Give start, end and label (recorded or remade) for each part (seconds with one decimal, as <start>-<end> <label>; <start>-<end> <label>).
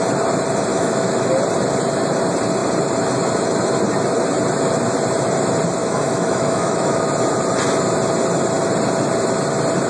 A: 0.0-0.7 recorded; 0.7-1.3 remade; 1.3-5.8 recorded; 5.8-7.0 remade; 7.0-9.9 recorded